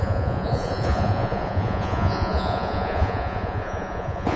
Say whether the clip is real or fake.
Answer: fake